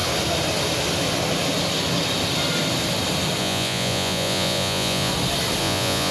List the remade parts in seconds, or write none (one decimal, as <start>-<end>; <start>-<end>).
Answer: 3.4-5.1; 5.6-6.1